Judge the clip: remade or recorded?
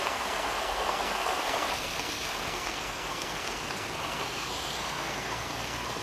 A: remade